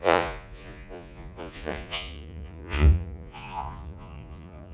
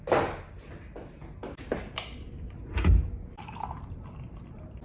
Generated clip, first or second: first